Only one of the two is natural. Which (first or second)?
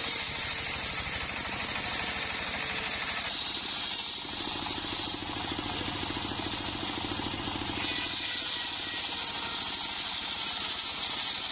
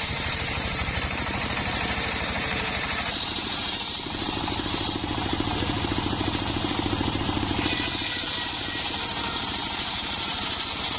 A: first